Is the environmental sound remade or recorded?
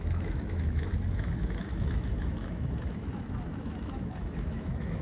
remade